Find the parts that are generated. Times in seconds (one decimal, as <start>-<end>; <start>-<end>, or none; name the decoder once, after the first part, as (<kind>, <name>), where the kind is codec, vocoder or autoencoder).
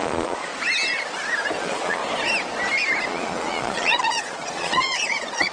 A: 0.0-0.5 (vocoder, Vocos); 1.6-2.0; 3.1-5.5